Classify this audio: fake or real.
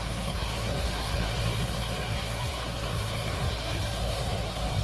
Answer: fake